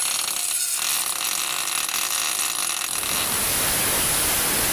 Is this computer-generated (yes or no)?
no